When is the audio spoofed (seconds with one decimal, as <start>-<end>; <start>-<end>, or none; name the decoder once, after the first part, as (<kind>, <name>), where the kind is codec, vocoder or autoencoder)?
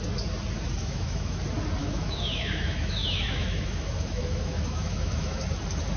0.8-1.4 (autoencoder, DAC-VAE); 1.8-5.4